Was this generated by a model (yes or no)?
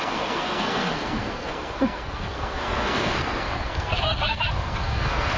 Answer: yes